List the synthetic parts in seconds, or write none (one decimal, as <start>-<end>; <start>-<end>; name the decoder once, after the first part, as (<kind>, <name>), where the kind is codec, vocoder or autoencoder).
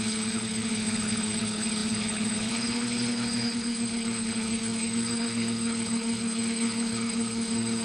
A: 0.0-7.8 (codec, HILCodec)